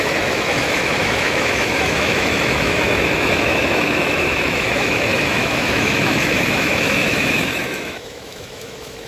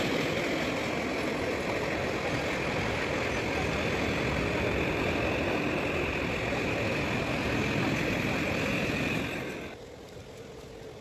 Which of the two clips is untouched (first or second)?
second